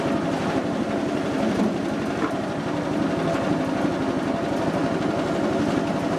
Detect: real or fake real